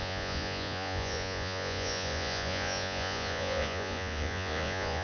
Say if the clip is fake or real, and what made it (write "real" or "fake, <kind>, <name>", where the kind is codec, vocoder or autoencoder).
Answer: fake, vocoder, Vocos